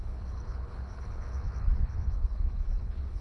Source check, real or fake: fake